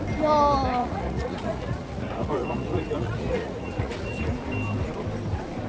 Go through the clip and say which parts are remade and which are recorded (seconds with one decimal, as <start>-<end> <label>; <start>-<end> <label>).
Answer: 0.0-0.8 recorded; 0.8-4.2 remade; 4.2-5.7 recorded